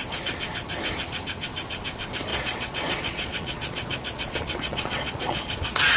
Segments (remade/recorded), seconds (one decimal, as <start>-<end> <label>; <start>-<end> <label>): 0.0-2.3 recorded; 2.3-6.0 remade